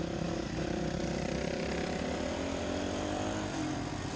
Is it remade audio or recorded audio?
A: recorded